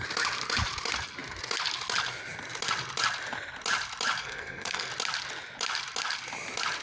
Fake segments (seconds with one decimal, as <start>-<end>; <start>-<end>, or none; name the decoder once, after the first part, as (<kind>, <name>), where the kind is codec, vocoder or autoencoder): 4.2-4.9 (codec, SNAC)